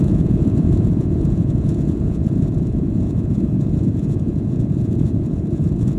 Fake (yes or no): yes